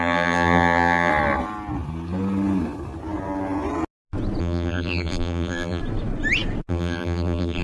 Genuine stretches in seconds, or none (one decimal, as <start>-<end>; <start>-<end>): 1.1-4.4; 5.8-6.7